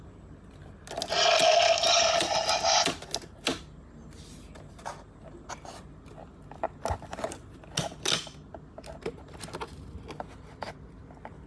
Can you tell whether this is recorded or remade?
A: recorded